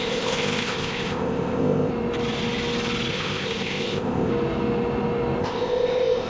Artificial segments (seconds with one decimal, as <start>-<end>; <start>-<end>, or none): 0.0-1.9; 3.1-4.3; 5.4-6.3